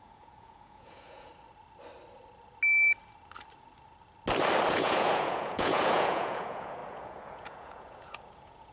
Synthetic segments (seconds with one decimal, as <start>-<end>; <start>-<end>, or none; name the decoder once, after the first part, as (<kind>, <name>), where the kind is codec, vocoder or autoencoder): 0.0-1.3 (vocoder, Vocos); 4.7-8.7